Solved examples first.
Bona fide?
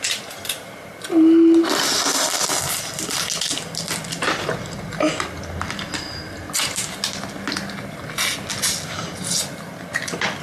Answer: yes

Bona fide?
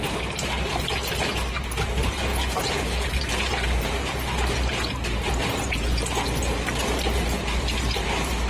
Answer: no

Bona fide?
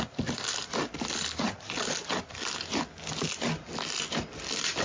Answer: yes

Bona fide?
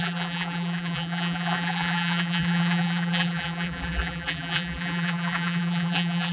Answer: no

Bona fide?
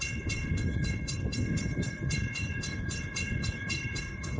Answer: no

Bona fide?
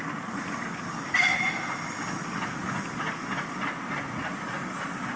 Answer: yes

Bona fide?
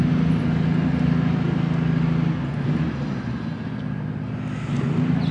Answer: yes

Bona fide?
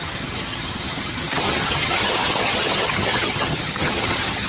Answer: no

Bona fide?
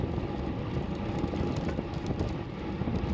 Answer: yes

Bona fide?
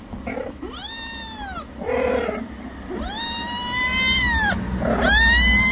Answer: yes